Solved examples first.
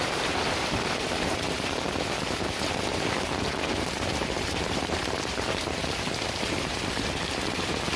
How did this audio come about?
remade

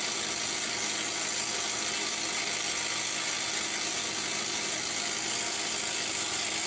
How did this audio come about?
recorded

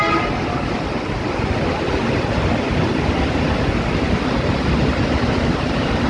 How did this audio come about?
recorded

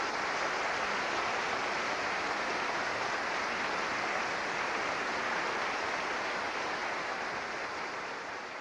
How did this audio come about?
recorded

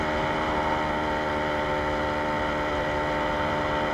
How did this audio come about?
recorded